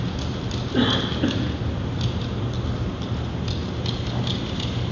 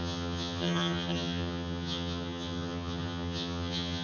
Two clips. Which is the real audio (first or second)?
first